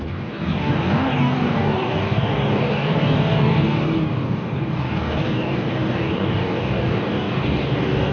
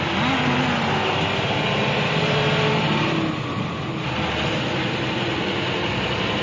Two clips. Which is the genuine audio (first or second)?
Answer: second